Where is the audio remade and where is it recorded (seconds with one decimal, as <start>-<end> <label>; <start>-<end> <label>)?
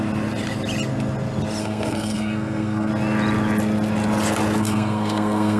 0.0-1.6 recorded; 1.6-2.9 remade; 2.9-4.6 recorded; 4.6-5.6 remade